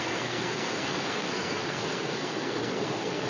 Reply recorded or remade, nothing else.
remade